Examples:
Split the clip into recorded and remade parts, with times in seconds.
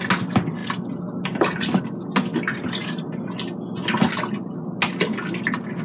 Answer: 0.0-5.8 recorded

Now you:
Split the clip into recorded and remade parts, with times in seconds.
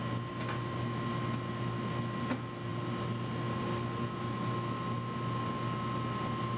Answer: 0.0-6.6 recorded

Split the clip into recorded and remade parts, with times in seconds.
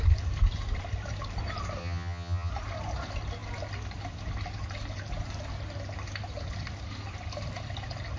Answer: 0.0-1.8 recorded; 1.8-2.5 remade; 2.5-8.2 recorded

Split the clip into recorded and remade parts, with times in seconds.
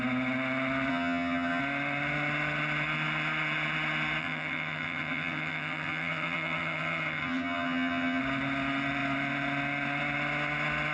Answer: 0.0-0.9 recorded; 0.9-1.6 remade; 1.6-4.2 recorded; 4.2-8.2 remade; 8.2-10.9 recorded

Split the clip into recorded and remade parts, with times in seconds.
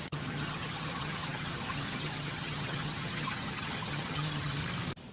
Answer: 0.0-4.6 remade; 4.6-5.1 recorded